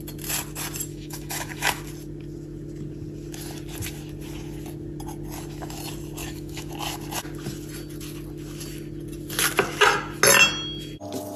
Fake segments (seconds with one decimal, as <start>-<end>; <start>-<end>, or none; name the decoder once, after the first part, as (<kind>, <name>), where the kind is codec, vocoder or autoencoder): 0.9-1.8 (autoencoder, DAC-VAE); 6.2-6.7